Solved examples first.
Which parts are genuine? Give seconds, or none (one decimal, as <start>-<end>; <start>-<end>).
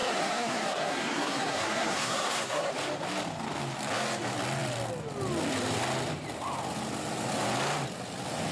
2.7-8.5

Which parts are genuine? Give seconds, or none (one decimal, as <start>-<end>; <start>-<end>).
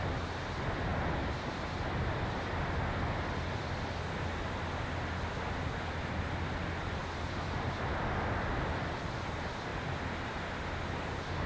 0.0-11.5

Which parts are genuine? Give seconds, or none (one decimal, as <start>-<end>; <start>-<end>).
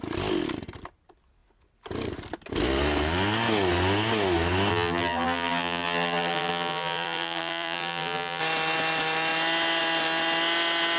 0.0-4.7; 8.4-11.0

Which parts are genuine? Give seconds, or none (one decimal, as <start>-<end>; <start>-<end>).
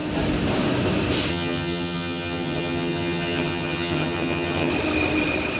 0.0-1.3; 4.7-5.6